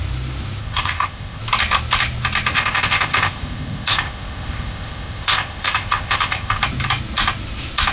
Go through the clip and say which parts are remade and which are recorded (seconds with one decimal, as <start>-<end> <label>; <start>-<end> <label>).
0.0-0.6 recorded; 0.6-1.4 remade; 1.4-2.5 recorded; 2.5-6.6 remade; 6.6-7.9 recorded